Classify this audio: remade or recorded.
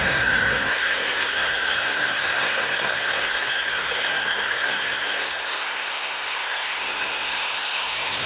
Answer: remade